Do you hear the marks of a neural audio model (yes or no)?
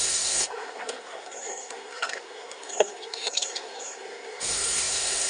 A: yes